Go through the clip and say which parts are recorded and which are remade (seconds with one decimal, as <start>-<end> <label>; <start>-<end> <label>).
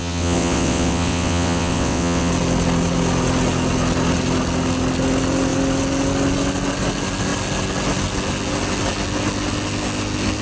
0.0-2.3 remade; 2.3-10.4 recorded